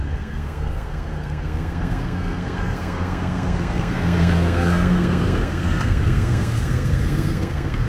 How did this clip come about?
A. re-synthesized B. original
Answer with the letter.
A